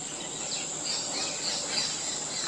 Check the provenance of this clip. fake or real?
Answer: real